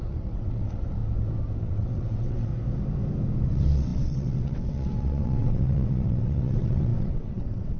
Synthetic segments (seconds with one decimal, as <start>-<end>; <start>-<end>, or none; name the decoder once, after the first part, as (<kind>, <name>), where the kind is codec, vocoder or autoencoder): 0.0-1.0 (vocoder, WaveNeXt); 1.6-2.5; 3.5-7.8